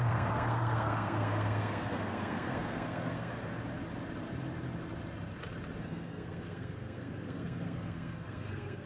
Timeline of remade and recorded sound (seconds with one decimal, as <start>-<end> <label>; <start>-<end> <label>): 0.0-3.3 remade; 3.3-5.8 recorded; 5.8-8.9 remade